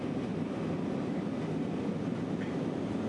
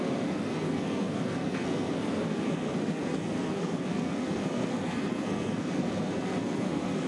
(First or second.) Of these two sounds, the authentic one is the first